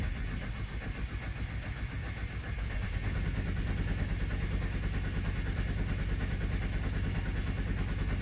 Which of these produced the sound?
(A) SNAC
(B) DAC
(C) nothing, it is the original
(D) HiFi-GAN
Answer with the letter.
C